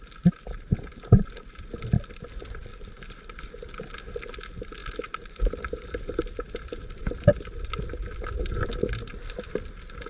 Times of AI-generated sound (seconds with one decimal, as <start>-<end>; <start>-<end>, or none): 2.7-3.5; 4.8-7.6